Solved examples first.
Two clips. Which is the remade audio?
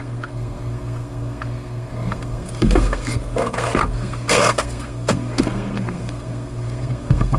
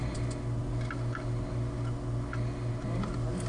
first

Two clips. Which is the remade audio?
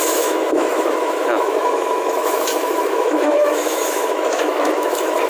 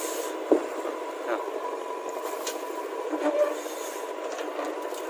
first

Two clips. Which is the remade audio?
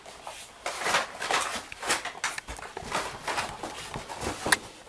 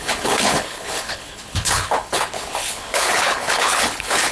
second